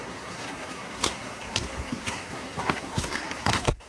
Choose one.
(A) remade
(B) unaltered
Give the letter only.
A